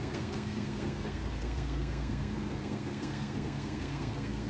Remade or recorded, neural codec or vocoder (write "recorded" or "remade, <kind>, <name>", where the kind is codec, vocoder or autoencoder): remade, codec, SNAC